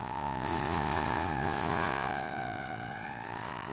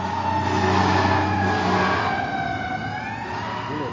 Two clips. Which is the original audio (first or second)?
second